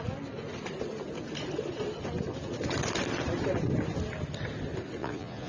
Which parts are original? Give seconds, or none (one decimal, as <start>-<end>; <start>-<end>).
0.0-5.0